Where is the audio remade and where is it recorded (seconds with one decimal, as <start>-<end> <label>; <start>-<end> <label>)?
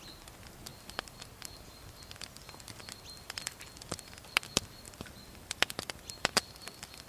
0.0-7.1 recorded